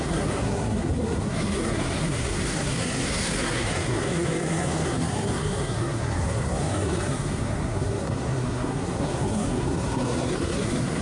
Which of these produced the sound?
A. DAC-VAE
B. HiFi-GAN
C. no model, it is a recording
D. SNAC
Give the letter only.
D